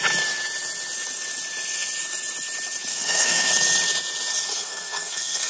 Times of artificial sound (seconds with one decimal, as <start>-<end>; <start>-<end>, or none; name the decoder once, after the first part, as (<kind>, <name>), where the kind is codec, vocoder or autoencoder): 2.9-3.5 (codec, SNAC); 4.5-5.5